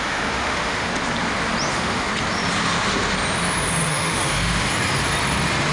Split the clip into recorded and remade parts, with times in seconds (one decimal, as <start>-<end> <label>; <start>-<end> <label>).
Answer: 0.0-0.9 remade; 0.9-1.7 recorded; 1.7-2.1 remade; 2.1-3.9 recorded; 3.9-4.7 remade; 4.7-5.7 recorded